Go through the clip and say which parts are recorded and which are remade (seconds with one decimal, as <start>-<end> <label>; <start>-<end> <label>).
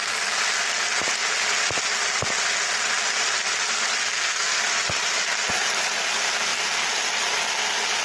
0.0-4.1 recorded; 4.1-4.6 remade; 4.6-8.0 recorded